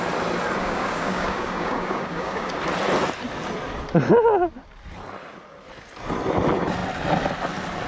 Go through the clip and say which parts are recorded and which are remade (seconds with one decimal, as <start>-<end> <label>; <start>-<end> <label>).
0.0-0.6 recorded; 0.6-2.6 remade; 2.6-7.9 recorded